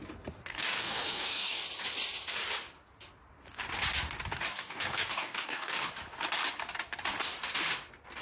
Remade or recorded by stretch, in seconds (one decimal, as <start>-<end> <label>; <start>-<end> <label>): 0.0-0.5 recorded; 0.5-1.6 remade; 1.6-4.5 recorded; 4.5-5.9 remade; 5.9-8.2 recorded